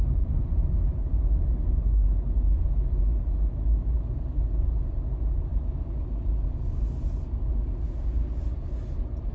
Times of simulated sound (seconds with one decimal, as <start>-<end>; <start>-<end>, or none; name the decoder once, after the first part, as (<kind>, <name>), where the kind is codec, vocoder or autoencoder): none

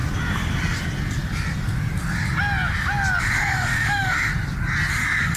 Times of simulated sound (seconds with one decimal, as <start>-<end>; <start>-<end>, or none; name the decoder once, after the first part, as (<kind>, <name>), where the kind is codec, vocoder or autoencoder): 3.2-4.3 (autoencoder, DAC-VAE); 4.9-5.4